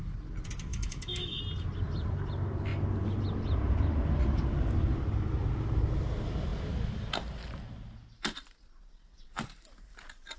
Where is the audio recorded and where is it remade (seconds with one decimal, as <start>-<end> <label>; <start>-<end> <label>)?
0.0-0.7 recorded; 0.7-1.4 remade; 1.4-10.4 recorded